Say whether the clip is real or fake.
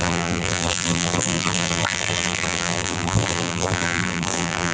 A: fake